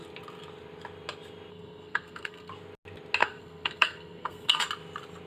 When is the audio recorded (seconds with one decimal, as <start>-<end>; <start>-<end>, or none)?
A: 0.0-1.5; 2.5-3.2; 4.6-5.3